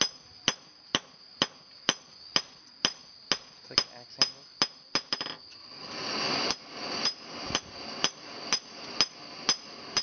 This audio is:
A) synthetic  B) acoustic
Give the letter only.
B